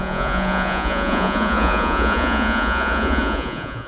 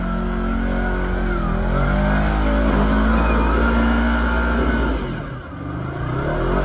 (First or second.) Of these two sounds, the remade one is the first